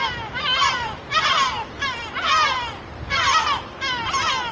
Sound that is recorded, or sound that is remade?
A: recorded